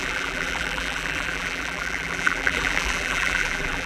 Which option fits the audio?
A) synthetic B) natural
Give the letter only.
A